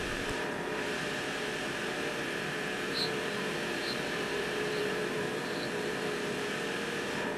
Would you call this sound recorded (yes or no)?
no